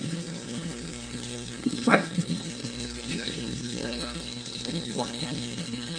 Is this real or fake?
fake